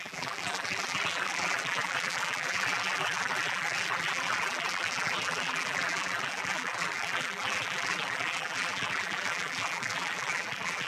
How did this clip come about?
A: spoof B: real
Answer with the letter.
A